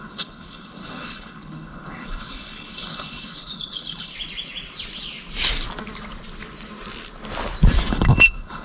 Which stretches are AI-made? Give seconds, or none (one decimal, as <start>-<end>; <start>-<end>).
0.0-4.1; 7.9-8.6

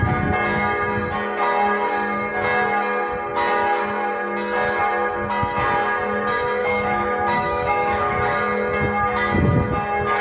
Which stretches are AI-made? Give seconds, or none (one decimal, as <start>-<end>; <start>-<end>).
6.6-8.1

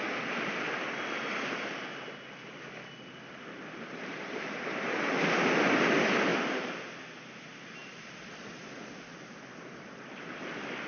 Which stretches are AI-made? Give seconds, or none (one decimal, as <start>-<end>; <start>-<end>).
6.3-6.9

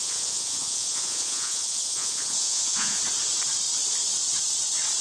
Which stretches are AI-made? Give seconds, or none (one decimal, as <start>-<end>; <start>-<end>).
0.0-3.0

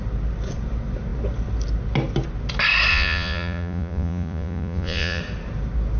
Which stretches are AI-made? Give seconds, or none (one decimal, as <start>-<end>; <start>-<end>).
2.9-5.2